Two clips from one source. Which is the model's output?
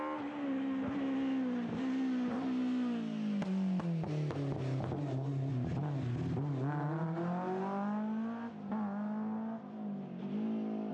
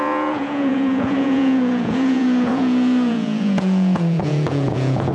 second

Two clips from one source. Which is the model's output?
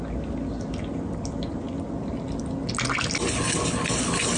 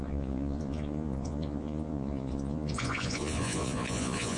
second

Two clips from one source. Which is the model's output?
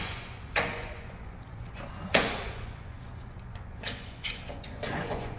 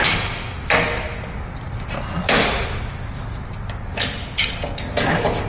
first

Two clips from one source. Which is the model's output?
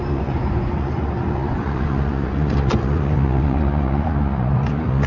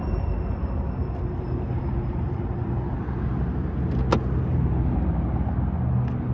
first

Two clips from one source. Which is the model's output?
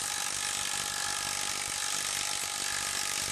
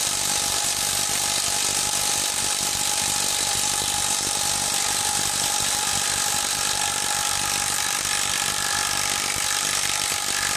second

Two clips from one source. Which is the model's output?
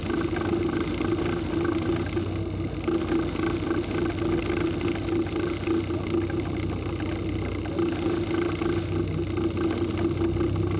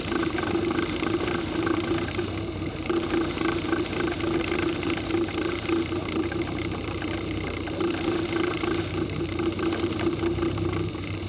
second